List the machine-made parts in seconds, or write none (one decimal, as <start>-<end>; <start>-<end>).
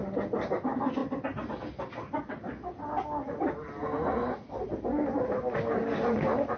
none